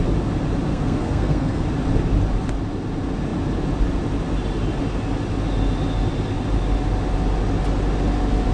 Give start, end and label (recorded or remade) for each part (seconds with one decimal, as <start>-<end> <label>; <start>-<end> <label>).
0.0-0.7 recorded; 0.7-1.6 remade; 1.6-8.5 recorded